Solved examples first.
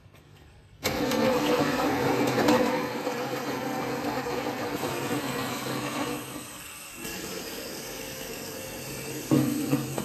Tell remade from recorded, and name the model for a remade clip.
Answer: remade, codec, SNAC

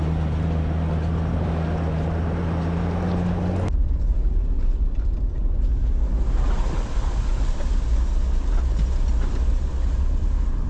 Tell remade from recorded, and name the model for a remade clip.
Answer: recorded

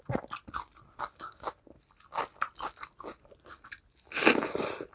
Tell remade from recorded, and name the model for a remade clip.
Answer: recorded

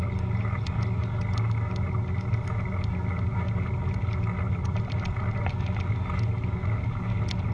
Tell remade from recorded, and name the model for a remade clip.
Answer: recorded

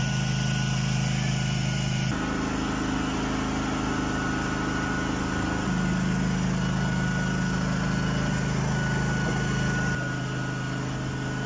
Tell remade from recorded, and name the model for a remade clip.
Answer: recorded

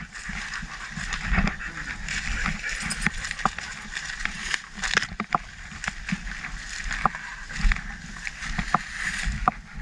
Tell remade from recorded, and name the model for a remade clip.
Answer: recorded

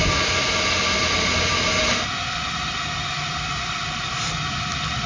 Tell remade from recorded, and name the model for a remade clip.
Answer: recorded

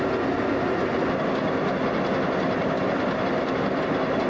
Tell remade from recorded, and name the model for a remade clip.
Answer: recorded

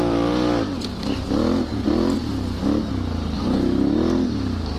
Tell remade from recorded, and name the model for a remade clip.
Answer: recorded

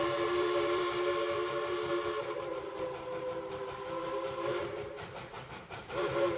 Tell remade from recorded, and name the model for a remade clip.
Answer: remade, vocoder, BigVGAN v2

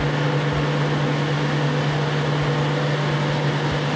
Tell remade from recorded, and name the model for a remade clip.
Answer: recorded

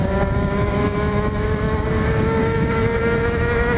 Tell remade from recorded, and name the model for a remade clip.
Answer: remade, codec, DAC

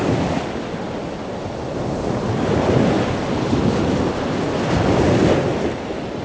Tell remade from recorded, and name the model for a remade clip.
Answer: recorded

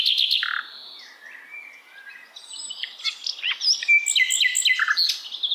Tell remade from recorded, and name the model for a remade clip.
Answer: recorded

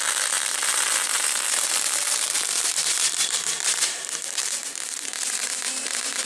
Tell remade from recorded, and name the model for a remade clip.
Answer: remade, vocoder, BigVGAN v2